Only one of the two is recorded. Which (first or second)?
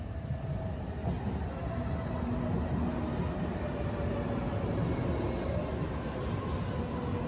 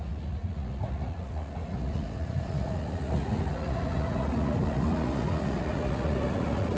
first